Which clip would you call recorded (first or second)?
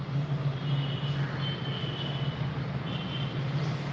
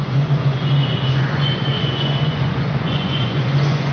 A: first